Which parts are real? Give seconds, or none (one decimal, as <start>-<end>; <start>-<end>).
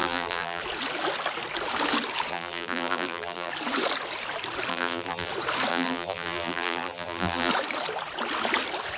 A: 0.6-2.3; 3.5-4.7; 5.3-5.7; 7.5-9.0